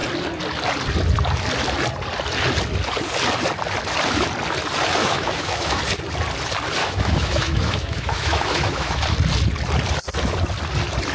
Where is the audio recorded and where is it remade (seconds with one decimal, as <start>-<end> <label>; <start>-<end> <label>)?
0.0-5.0 recorded; 5.0-5.8 remade; 5.8-6.8 recorded; 6.8-9.0 remade; 9.0-11.1 recorded